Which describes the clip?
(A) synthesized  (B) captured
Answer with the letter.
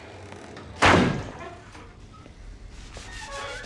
B